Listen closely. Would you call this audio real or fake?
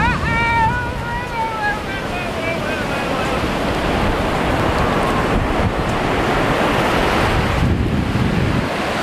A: real